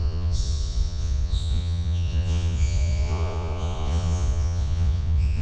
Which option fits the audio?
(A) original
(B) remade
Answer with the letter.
B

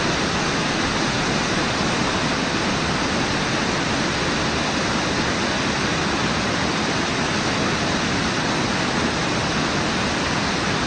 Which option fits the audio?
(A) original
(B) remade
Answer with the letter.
A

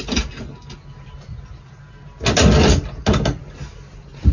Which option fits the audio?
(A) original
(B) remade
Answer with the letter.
A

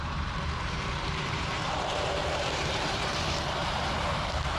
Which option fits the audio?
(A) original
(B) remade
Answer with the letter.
B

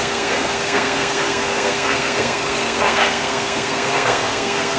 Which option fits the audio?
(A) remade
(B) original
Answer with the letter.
A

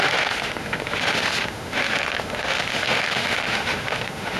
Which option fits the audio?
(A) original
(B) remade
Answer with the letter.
B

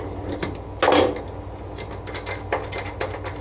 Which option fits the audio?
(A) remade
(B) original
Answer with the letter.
B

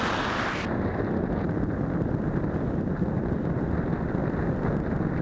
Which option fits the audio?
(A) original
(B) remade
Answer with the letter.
A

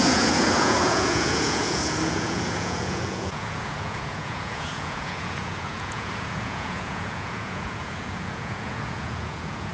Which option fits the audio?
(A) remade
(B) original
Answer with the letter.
A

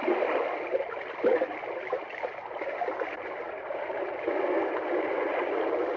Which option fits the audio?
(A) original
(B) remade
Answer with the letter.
A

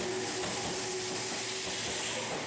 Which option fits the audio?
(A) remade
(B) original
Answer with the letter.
B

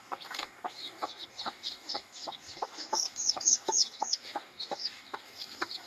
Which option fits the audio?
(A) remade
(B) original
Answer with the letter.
A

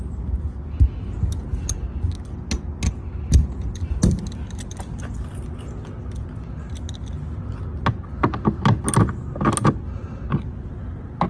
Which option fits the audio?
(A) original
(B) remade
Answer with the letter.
A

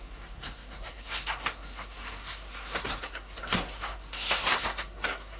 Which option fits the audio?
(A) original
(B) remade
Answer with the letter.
B